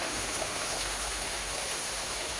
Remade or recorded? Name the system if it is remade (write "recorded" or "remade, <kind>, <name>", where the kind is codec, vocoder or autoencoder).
remade, autoencoder, DAC-VAE